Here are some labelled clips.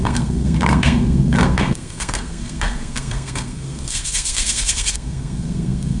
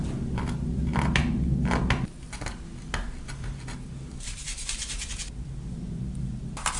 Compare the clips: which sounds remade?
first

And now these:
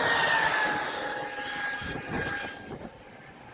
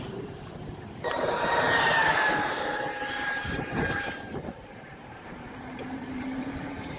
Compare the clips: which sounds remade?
second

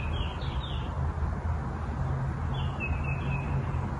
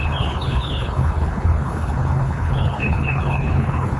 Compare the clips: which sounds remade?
second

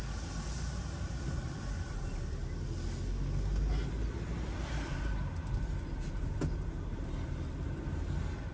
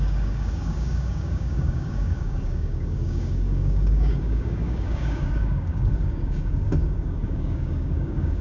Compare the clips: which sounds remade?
second